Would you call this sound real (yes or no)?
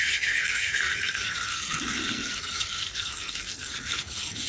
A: no